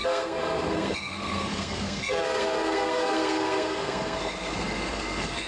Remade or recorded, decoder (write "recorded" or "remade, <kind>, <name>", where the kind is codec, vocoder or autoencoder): remade, codec, SNAC